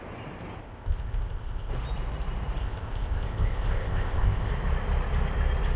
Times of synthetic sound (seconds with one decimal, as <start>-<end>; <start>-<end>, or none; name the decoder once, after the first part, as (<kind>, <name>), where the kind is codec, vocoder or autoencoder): 0.6-1.7 (codec, ZipCodec); 2.6-4.5